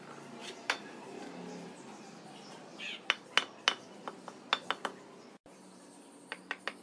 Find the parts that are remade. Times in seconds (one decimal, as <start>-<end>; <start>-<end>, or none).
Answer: none